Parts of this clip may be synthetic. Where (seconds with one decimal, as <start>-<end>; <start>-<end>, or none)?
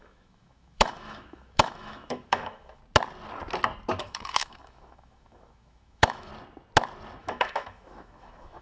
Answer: 0.0-2.8; 4.0-6.3; 7.2-8.6